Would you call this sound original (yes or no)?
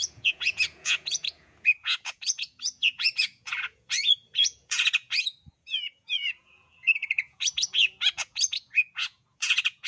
no